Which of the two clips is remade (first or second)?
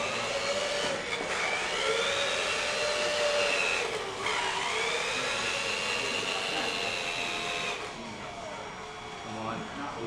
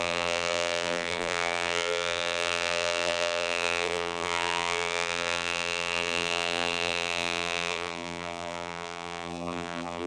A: second